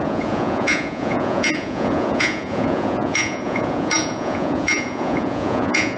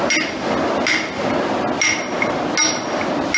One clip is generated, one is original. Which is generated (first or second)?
first